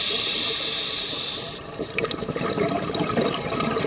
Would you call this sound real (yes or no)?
no